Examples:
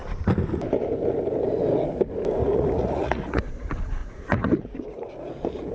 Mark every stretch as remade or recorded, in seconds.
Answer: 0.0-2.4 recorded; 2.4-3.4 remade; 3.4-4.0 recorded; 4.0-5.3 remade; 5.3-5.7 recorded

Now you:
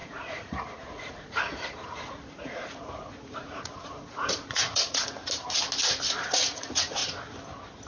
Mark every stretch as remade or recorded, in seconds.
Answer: 0.0-5.2 remade; 5.2-6.1 recorded; 6.1-7.0 remade; 7.0-7.9 recorded

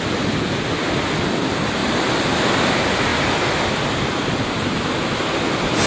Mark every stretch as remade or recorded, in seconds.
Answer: 0.0-5.9 recorded

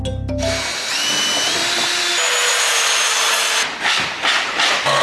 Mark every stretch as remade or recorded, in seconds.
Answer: 0.0-5.0 recorded

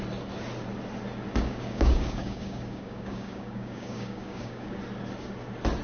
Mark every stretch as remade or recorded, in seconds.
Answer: 0.0-1.4 recorded; 1.4-4.8 remade; 4.8-5.8 recorded

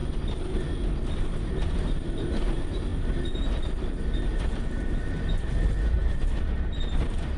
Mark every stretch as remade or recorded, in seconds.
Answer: 0.0-1.2 recorded; 1.2-7.4 remade

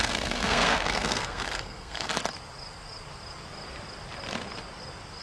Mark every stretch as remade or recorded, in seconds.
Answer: 0.0-2.1 remade; 2.1-5.2 recorded